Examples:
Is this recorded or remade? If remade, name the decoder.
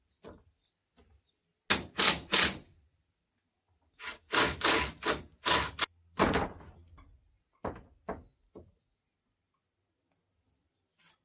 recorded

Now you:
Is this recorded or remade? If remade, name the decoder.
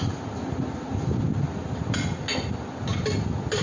recorded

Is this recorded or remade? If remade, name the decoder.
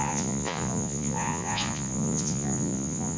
remade, vocoder, Vocos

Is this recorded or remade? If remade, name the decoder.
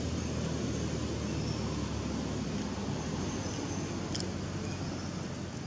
recorded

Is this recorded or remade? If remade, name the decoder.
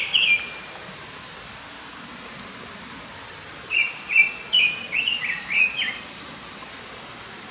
recorded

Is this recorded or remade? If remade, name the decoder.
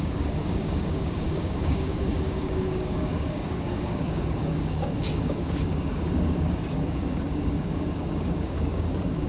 remade, codec, DAC